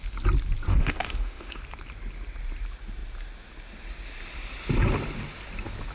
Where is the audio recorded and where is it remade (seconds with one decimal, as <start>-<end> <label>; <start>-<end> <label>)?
0.0-0.7 recorded; 0.7-1.6 remade; 1.6-5.9 recorded